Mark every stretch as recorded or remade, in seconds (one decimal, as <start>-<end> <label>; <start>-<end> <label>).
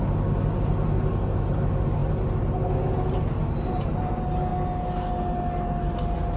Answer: 0.0-6.4 recorded